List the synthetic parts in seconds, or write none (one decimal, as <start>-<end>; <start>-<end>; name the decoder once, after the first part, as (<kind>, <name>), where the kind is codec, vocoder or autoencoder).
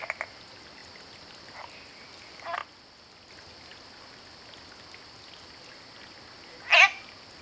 none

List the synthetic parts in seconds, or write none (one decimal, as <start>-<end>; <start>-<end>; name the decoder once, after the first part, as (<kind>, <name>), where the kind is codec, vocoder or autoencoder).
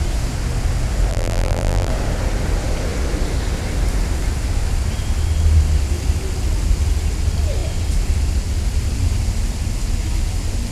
1.1-1.9 (vocoder, BigVGAN v2)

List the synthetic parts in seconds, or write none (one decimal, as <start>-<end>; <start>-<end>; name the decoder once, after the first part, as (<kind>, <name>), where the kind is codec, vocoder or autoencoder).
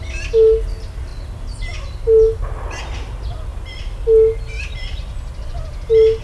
none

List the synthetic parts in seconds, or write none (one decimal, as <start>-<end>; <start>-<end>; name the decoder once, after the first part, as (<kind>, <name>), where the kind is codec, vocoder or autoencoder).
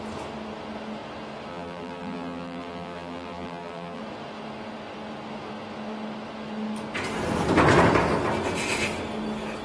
1.5-4.0 (vocoder, BigVGAN v2)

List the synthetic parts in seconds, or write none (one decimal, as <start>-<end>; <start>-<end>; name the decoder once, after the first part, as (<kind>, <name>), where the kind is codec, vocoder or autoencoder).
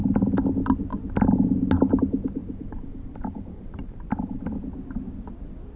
2.4-4.5 (vocoder, BigVGAN v2)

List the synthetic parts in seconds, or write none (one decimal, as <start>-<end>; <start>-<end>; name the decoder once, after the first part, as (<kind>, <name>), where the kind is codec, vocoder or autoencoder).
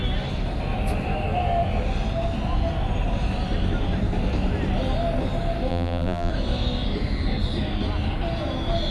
5.7-6.3 (vocoder, BigVGAN v2)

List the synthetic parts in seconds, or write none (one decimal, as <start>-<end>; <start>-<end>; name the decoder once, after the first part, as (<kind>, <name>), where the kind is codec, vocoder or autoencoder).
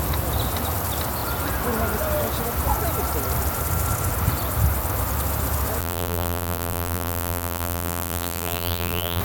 5.8-9.2 (vocoder, BigVGAN v2)